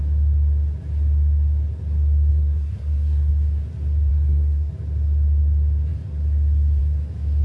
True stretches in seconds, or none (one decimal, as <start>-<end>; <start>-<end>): 0.0-2.3; 3.3-4.1; 4.7-7.4